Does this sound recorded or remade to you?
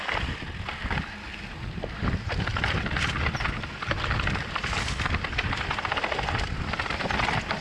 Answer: recorded